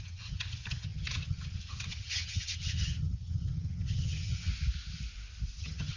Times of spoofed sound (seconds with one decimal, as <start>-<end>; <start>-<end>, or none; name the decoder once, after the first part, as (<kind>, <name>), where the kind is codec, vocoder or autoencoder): 0.0-4.5 (vocoder, HiFi-GAN); 5.6-6.0